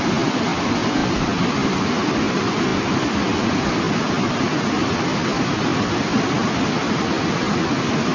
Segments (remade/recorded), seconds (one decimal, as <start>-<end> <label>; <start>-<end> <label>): 0.0-8.1 recorded